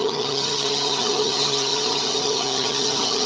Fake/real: fake